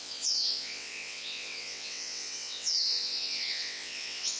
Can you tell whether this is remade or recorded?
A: remade